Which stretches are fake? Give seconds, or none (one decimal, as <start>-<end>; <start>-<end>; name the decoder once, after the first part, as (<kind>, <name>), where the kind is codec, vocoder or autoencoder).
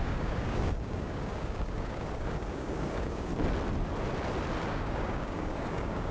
0.0-3.3 (codec, DAC); 4.7-6.1